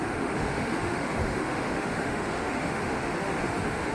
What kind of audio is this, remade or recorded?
remade